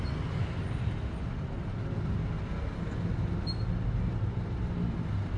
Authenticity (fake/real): real